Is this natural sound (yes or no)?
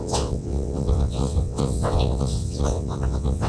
no